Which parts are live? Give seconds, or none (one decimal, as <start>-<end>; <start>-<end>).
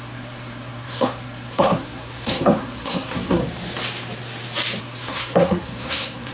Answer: 3.4-4.8